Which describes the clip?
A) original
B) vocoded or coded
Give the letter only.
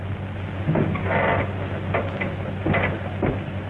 A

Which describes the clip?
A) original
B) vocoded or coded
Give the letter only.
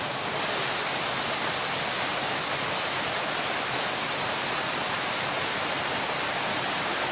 A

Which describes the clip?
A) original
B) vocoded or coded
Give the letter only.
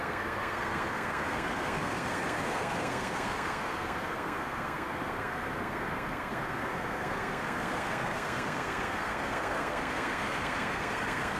B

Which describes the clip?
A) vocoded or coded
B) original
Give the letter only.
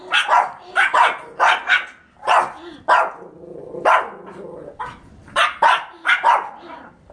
B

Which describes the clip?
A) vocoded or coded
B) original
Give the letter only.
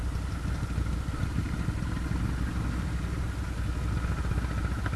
B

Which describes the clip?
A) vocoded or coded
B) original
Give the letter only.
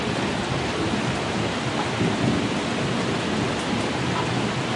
B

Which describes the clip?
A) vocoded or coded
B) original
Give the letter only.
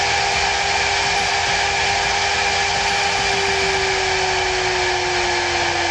B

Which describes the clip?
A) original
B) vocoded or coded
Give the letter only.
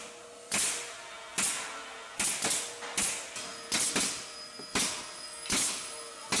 A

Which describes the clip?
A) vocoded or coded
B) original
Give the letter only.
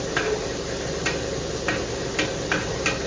B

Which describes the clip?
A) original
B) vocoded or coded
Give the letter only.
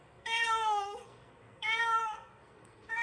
B